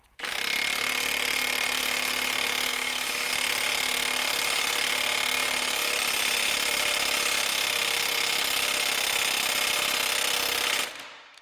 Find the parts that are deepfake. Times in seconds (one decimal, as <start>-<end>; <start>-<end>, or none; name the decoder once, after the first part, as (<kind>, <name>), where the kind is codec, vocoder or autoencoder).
2.7-3.3 (autoencoder, DAC-VAE)